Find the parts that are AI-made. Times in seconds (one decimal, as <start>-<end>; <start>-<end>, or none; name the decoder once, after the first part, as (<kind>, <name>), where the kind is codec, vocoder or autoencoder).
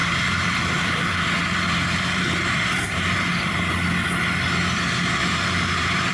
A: 0.0-3.7 (vocoder, BigVGAN v2); 5.2-6.1